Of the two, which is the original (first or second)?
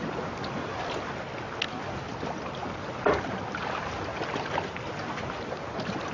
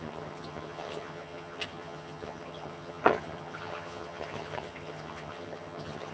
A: first